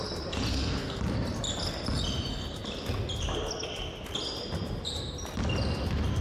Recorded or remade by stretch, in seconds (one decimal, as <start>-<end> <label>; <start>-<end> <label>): 0.0-0.5 recorded; 0.5-1.0 remade; 1.0-6.2 recorded